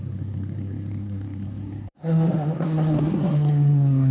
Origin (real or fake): fake